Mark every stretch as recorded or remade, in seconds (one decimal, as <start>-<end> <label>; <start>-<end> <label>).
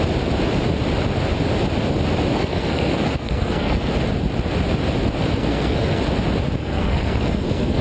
0.0-2.3 recorded; 2.3-3.9 remade; 3.9-5.2 recorded; 5.2-6.0 remade; 6.0-6.6 recorded; 6.6-7.8 remade